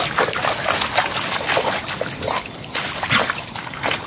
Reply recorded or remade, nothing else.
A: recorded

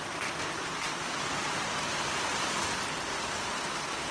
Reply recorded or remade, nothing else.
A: recorded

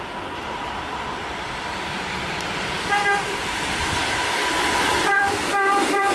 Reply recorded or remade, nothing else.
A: remade